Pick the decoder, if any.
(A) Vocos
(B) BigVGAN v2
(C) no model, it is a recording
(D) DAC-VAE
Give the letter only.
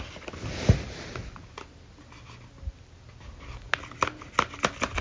C